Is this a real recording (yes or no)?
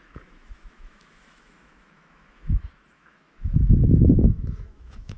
no